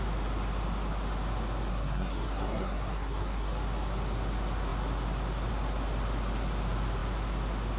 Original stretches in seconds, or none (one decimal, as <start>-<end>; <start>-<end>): 0.0-1.7; 3.5-7.8

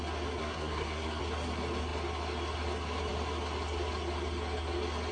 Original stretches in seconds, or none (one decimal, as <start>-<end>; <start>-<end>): 0.0-0.4; 1.2-5.1

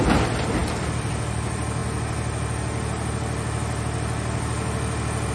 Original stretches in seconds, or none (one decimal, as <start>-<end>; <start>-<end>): 0.0-5.3